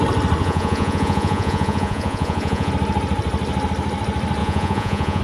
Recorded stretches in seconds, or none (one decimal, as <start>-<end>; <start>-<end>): 0.0-0.4; 2.7-4.4